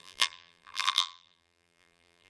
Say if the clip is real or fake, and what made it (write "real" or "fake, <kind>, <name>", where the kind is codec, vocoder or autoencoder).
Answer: fake, vocoder, BigVGAN v2